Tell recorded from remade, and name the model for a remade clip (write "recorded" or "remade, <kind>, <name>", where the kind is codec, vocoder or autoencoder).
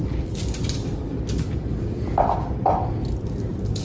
recorded